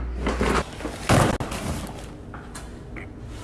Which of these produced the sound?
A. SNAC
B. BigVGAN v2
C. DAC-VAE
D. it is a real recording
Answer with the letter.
D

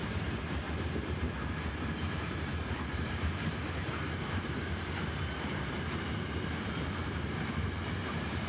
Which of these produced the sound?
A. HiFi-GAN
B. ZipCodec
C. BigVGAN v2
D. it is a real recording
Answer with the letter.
C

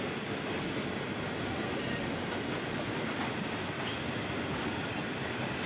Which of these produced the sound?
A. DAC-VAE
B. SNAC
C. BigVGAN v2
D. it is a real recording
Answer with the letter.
D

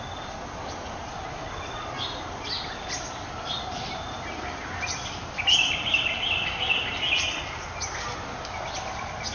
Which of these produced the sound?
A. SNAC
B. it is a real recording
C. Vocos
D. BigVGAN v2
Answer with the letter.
B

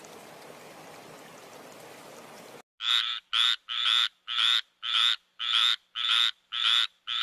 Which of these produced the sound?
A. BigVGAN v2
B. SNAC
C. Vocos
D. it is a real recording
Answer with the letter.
D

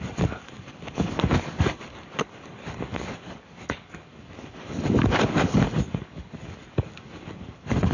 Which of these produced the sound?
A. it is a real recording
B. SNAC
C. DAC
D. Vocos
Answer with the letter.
C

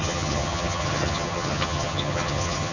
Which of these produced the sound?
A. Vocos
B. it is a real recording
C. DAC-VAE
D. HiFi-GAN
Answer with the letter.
D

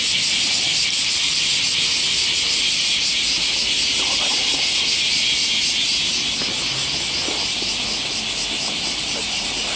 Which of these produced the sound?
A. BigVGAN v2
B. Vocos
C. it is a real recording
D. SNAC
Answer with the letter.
C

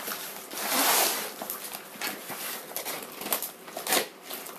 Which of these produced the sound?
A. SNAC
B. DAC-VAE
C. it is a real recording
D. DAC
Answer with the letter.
C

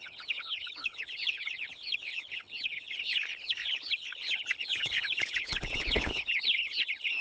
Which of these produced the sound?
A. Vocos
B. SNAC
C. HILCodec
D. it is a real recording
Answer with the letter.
C